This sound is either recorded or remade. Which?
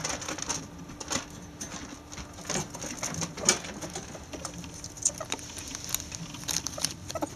recorded